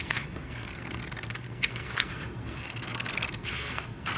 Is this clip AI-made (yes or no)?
yes